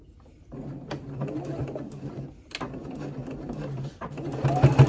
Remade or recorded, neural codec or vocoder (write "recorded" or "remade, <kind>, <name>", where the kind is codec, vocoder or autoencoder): recorded